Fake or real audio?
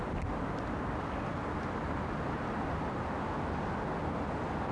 real